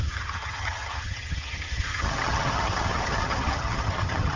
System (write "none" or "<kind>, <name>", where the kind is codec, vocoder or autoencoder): vocoder, HiFi-GAN